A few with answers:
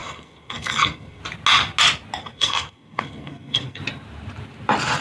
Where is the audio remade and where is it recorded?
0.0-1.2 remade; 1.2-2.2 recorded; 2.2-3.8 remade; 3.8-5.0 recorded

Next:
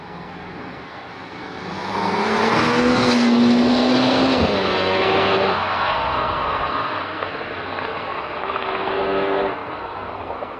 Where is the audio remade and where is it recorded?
0.0-10.6 remade

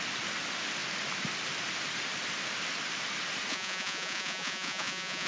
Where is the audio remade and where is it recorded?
0.0-3.5 recorded; 3.5-5.3 remade

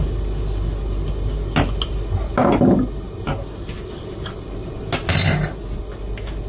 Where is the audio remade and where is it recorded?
0.0-6.5 recorded

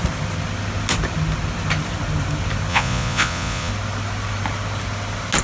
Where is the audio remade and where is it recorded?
0.0-2.7 recorded; 2.7-3.7 remade; 3.7-5.4 recorded

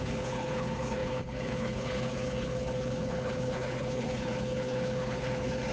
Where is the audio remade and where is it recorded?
0.0-5.7 remade

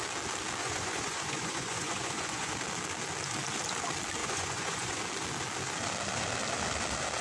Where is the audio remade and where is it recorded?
0.0-0.6 recorded; 0.6-2.5 remade; 2.5-4.2 recorded; 4.2-5.0 remade; 5.0-7.2 recorded